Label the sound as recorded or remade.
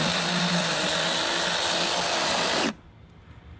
recorded